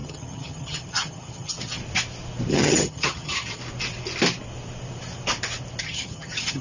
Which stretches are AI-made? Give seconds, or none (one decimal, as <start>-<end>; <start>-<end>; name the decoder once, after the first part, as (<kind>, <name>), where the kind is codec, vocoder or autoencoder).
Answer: 0.0-1.8 (vocoder, HiFi-GAN); 2.5-3.6; 5.8-6.6